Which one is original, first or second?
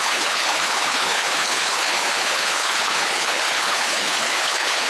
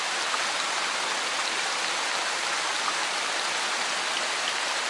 second